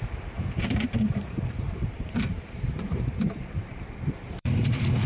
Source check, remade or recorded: remade